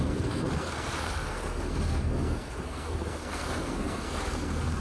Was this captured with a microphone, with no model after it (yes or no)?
no